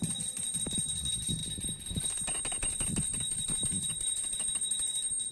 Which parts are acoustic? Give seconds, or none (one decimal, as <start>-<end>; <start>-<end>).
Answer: 0.0-5.3